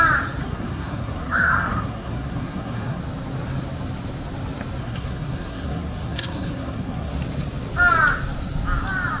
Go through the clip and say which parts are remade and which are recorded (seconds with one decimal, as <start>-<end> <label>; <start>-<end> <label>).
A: 0.0-0.4 recorded; 0.4-3.0 remade; 3.0-4.8 recorded; 4.8-7.1 remade; 7.1-9.2 recorded